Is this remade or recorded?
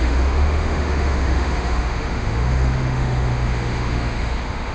remade